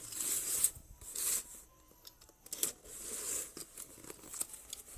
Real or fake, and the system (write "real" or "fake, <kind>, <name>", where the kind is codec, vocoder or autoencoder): real